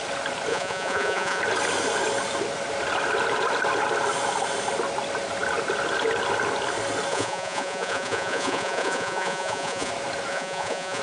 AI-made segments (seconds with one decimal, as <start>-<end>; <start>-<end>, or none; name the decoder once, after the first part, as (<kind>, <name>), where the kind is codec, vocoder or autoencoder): 0.5-1.4 (vocoder, Vocos); 7.1-9.9; 10.3-11.0